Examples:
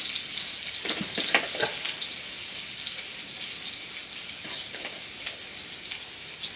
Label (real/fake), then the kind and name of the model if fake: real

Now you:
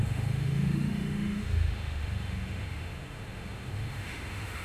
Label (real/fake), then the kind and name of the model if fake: fake, autoencoder, DAC-VAE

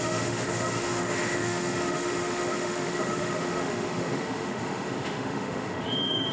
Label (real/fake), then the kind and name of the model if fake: fake, autoencoder, DAC-VAE